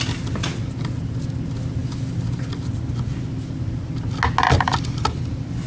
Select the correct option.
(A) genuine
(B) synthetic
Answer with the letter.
A